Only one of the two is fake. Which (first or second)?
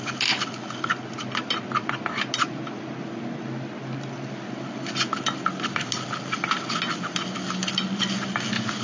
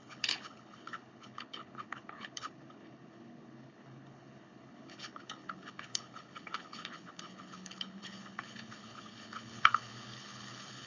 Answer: second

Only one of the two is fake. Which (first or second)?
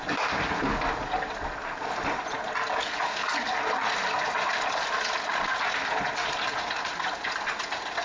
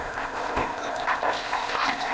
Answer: second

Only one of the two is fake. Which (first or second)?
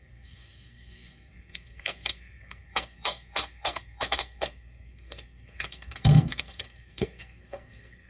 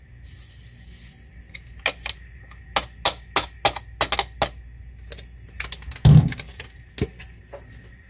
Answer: first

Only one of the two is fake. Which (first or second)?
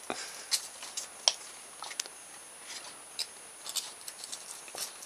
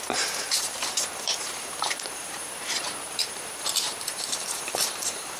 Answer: second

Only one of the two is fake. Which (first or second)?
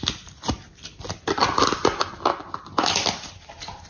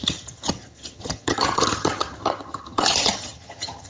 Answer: second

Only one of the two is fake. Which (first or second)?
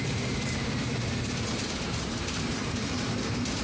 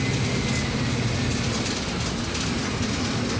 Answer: first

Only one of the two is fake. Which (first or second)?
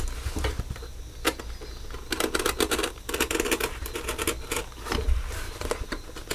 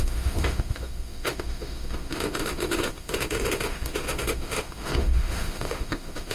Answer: second